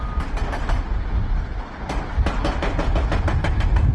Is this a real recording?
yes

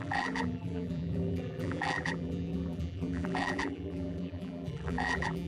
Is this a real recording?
no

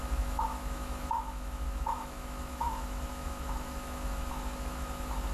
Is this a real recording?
no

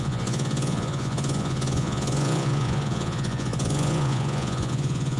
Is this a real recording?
no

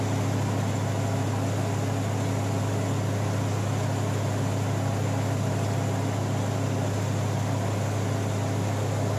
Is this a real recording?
yes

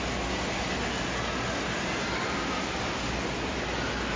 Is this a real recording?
yes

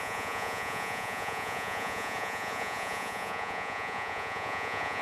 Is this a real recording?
no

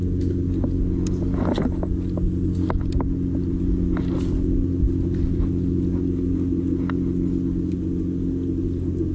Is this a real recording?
yes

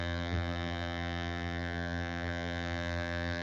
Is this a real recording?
no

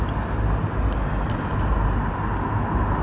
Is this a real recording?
yes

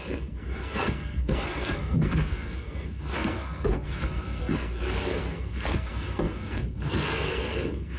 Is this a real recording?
no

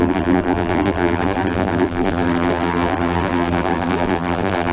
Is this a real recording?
no